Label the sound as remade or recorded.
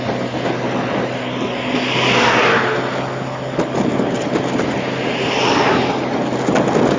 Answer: recorded